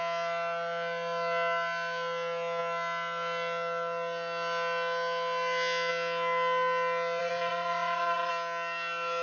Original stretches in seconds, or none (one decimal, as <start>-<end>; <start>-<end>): 0.0-7.2; 8.3-9.2